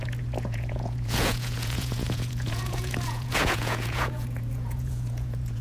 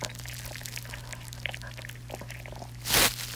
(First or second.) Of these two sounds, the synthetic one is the first